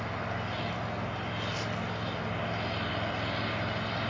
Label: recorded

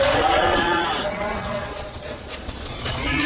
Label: remade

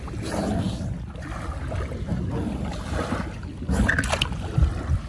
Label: recorded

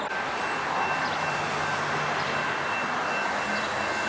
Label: recorded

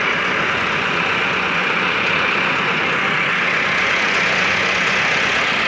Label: remade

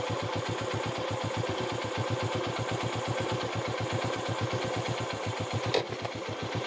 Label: recorded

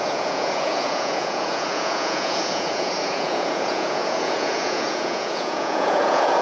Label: remade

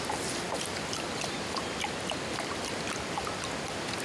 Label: recorded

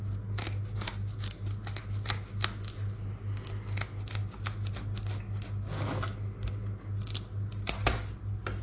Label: recorded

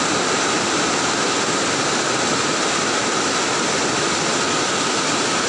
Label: recorded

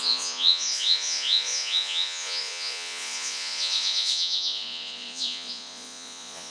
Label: remade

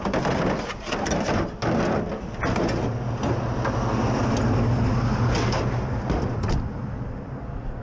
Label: recorded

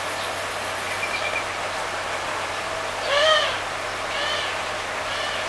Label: recorded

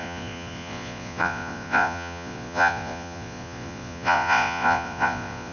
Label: remade